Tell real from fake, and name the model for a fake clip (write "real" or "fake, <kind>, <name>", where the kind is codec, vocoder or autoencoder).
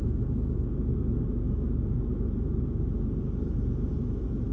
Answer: fake, autoencoder, DAC-VAE